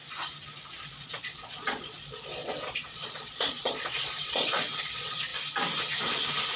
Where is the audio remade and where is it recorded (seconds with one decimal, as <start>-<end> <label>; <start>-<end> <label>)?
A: 0.0-0.7 recorded; 0.7-5.3 remade; 5.3-6.6 recorded